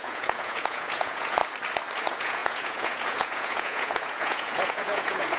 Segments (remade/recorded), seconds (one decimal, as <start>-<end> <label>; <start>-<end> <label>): 0.0-1.4 remade; 1.4-2.0 recorded; 2.0-5.4 remade